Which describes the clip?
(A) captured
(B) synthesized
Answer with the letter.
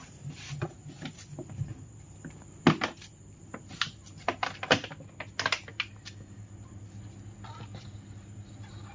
A